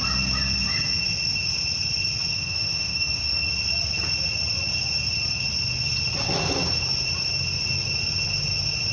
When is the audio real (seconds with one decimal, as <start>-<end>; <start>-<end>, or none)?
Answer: 0.0-2.3; 3.5-8.9